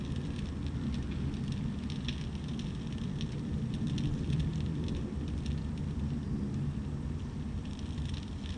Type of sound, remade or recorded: recorded